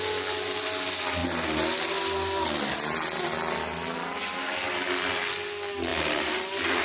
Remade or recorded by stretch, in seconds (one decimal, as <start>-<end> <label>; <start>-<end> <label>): 0.0-6.8 recorded